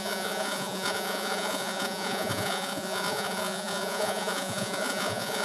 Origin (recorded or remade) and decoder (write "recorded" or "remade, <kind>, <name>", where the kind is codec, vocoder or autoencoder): remade, vocoder, Vocos